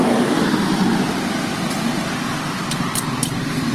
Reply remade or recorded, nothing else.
recorded